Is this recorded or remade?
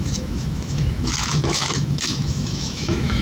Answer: remade